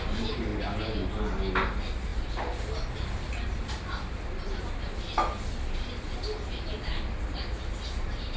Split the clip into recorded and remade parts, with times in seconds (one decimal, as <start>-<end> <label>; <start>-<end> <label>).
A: 0.0-8.4 recorded

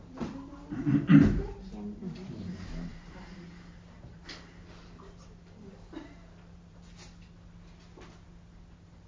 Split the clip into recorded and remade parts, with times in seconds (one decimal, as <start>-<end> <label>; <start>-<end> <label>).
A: 0.0-9.1 recorded

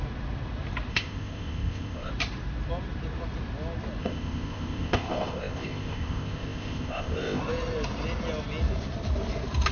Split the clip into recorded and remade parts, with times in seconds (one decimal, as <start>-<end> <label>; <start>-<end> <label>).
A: 0.0-0.9 recorded; 0.9-2.1 remade; 2.1-4.0 recorded; 4.0-7.4 remade; 7.4-9.7 recorded

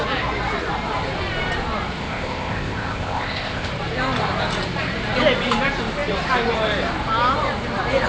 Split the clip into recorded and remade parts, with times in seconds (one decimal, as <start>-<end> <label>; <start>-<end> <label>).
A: 0.0-2.0 recorded; 2.0-3.7 remade; 3.7-8.1 recorded